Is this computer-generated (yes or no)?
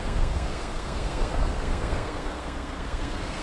yes